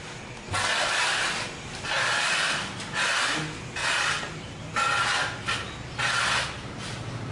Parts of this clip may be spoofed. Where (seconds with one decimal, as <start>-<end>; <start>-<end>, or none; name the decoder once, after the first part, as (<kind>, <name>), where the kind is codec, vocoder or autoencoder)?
none